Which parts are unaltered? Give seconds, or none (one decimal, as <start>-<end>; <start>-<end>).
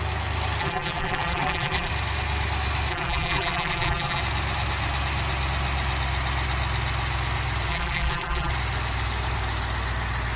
0.0-0.6; 1.9-2.9; 4.2-7.7; 8.5-10.4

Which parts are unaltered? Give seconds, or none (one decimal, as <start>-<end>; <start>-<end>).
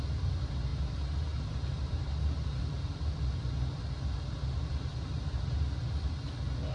0.0-0.7; 2.6-4.9; 5.6-6.7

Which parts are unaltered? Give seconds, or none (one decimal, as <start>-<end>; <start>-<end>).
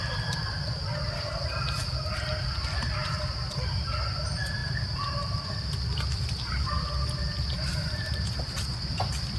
0.0-7.8; 8.4-9.4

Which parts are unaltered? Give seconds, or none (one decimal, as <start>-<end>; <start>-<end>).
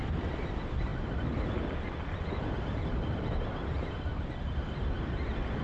0.0-5.6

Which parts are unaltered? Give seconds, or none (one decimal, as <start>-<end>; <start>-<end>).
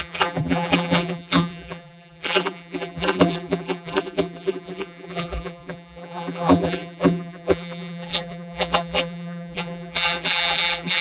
none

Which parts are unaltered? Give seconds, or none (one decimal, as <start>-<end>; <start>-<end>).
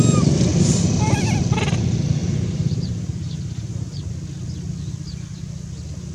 0.0-0.5; 1.4-2.2; 4.1-6.1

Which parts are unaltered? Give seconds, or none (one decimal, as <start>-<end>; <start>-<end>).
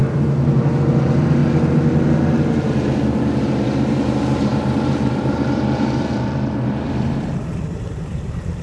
1.4-2.5